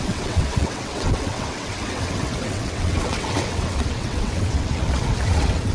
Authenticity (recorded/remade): remade